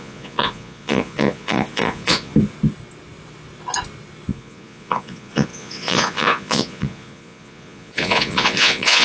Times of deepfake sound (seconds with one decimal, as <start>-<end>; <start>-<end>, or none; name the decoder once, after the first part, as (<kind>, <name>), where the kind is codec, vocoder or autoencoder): 0.0-2.3 (vocoder, Vocos); 4.3-9.0